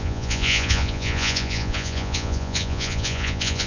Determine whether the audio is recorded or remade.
remade